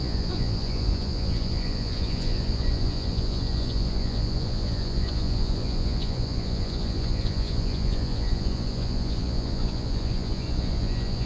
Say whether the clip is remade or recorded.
remade